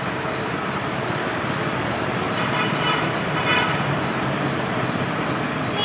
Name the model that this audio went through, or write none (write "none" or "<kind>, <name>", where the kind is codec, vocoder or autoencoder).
vocoder, BigVGAN v2